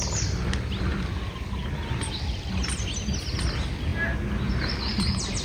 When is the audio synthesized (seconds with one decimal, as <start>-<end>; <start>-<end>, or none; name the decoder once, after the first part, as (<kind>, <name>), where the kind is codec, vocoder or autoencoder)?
none